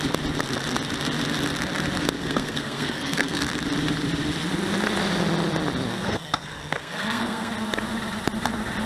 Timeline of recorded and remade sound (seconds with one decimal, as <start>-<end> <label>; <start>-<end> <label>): 0.0-2.2 recorded; 2.2-3.4 remade; 3.4-5.9 recorded; 5.9-7.5 remade; 7.5-8.9 recorded